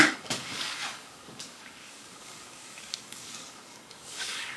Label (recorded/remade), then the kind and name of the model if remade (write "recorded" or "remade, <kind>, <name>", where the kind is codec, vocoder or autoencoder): remade, codec, DAC